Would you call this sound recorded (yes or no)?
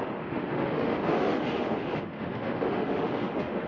no